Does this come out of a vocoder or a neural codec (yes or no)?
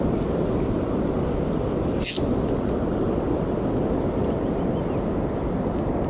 no